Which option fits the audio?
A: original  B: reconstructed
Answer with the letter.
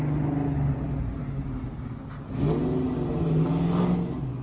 A